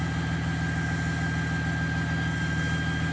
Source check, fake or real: real